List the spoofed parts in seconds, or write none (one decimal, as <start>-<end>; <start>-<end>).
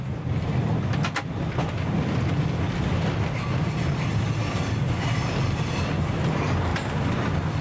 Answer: none